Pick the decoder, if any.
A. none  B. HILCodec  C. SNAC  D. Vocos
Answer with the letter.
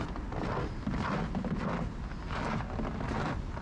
A